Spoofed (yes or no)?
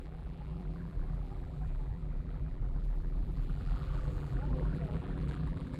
yes